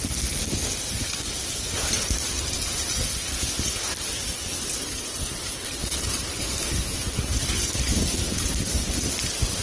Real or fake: fake